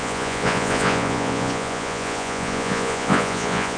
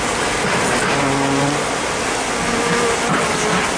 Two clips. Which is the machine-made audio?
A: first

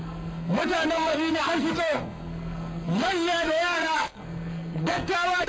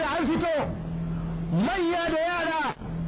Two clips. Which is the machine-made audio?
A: first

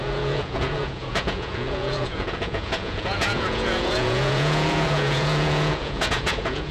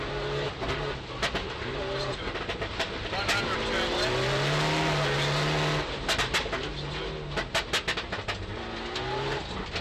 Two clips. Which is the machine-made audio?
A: first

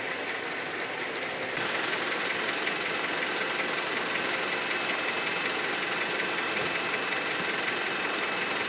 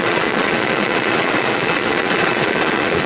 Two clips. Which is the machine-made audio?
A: second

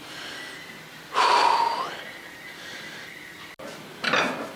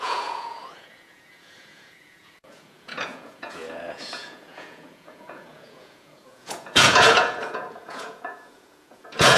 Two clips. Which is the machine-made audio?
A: second